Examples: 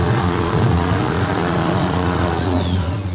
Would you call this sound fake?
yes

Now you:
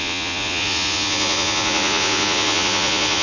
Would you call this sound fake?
yes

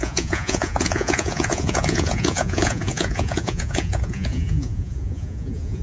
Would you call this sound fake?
yes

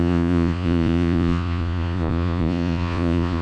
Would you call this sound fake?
yes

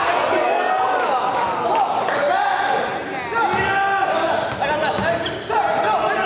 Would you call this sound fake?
no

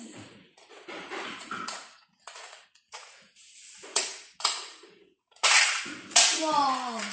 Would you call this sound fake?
yes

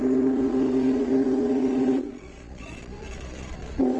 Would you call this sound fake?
yes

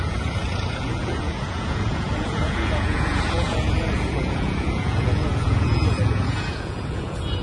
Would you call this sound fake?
yes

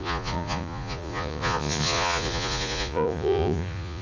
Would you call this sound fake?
yes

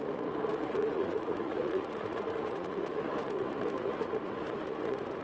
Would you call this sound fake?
yes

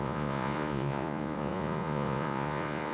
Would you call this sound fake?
yes